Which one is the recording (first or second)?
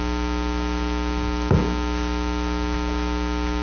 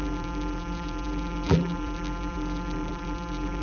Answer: first